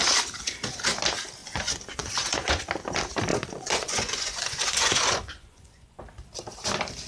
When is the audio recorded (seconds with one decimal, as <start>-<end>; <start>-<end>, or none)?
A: 0.0-1.4; 2.6-3.3; 6.0-7.1